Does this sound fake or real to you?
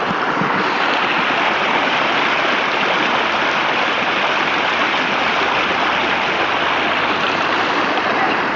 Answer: real